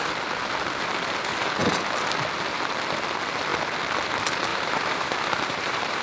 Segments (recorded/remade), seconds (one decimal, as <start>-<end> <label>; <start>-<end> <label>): 0.0-4.5 recorded; 4.5-6.0 remade